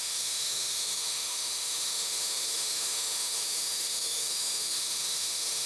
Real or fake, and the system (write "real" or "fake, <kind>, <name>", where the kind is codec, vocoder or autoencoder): fake, autoencoder, DAC-VAE